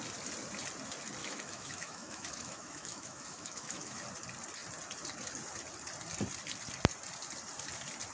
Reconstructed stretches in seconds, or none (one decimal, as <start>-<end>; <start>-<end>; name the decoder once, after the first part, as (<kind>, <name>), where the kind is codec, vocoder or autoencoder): 1.2-4.0 (autoencoder, DAC-VAE)